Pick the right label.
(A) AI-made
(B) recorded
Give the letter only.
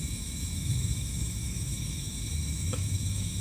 A